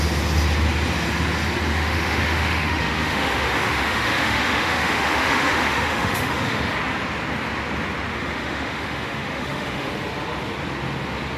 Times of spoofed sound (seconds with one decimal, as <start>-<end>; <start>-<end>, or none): 1.7-6.7; 8.1-9.9